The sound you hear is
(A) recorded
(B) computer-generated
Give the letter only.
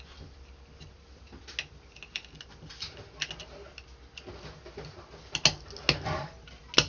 A